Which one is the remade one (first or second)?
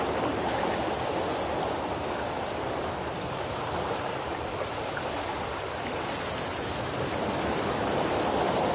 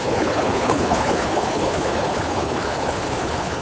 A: second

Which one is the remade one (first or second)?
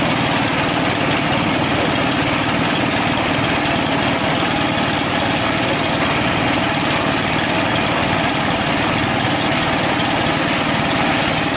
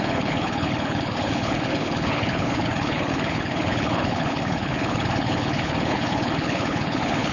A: second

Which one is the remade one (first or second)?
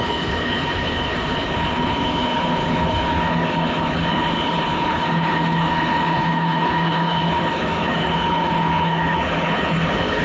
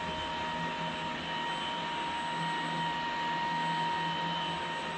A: first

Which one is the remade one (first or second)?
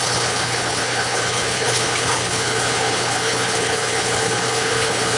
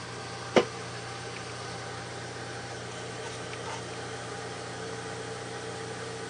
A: first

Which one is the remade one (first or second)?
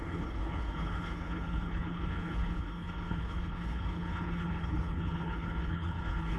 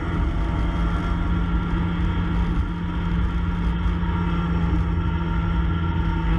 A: first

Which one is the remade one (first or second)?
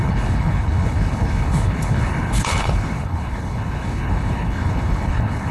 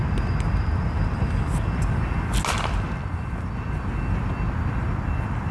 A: first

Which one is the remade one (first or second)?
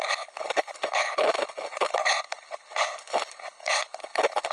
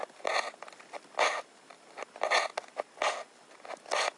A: first